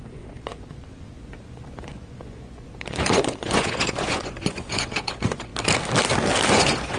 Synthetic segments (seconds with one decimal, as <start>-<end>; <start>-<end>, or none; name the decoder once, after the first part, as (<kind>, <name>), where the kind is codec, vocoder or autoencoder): 0.0-5.5 (vocoder, Vocos); 6.5-7.0